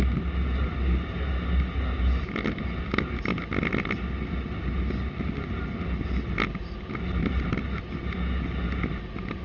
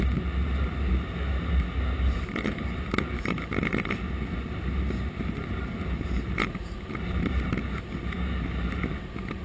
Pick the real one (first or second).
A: first